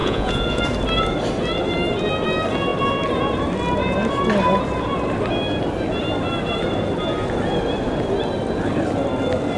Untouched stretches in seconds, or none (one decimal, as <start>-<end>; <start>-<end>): 0.6-9.6